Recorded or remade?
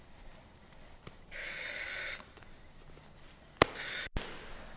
recorded